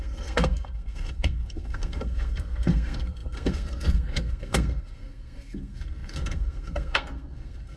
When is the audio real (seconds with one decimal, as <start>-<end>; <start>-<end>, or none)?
none